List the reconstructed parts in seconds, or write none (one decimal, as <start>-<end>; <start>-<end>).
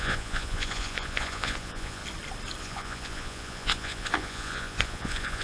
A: 0.0-2.0; 2.6-5.4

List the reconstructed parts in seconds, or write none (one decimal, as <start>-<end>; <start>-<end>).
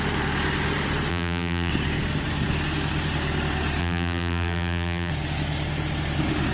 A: 1.1-1.7; 3.8-5.1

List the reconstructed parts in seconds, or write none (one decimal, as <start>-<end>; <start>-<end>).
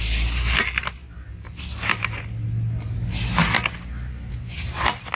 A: none